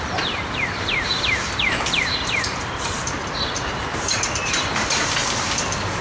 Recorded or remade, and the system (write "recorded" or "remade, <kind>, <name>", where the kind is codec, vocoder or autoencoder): remade, vocoder, BigVGAN v2